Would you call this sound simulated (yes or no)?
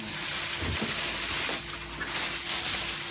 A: no